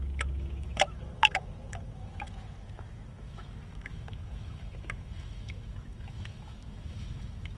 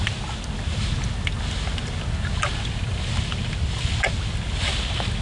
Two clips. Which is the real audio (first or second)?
second